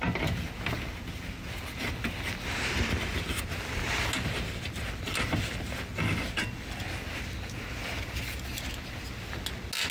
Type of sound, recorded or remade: recorded